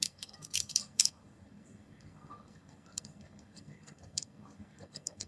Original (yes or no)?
no